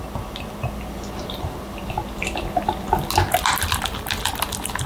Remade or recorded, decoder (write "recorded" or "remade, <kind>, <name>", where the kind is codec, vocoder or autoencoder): recorded